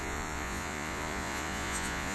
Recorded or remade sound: remade